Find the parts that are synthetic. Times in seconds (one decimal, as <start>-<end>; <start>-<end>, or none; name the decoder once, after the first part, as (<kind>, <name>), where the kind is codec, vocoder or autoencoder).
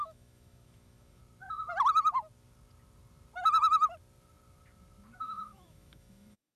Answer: 0.0-1.2 (autoencoder, DAC-VAE); 5.2-6.6